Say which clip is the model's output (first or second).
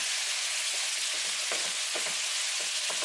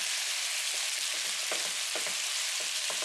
first